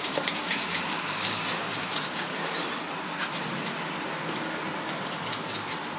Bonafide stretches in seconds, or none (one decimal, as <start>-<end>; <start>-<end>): 2.3-6.0

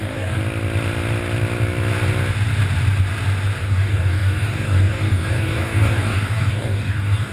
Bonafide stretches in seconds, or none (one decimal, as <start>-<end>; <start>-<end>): 0.4-3.7

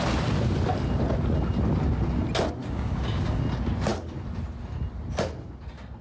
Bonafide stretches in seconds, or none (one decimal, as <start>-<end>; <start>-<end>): 0.0-2.6; 3.4-6.0

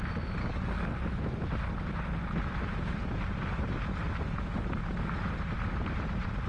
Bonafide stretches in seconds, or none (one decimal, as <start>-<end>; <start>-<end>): 0.0-0.4; 1.0-6.5

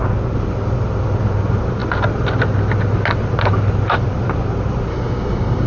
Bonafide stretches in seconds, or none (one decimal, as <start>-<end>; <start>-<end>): 0.0-4.9

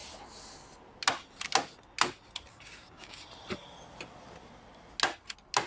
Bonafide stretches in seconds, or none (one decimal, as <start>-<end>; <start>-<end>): 0.0-2.5; 3.2-5.7

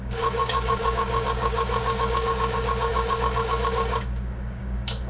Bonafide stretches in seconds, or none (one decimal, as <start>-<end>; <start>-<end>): none